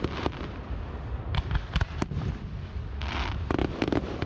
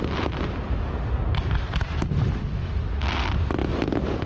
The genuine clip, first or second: second